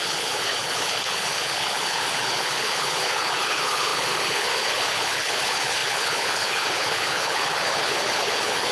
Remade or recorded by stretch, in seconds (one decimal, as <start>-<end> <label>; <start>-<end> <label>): 0.0-8.7 remade